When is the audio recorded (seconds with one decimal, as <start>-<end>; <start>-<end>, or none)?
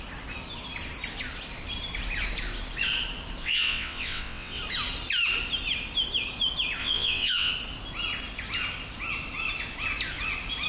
0.0-3.4; 4.6-6.8; 7.5-10.7